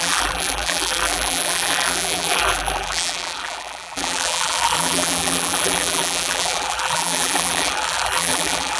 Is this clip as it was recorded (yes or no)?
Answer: no